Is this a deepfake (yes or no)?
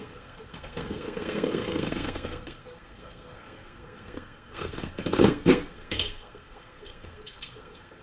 yes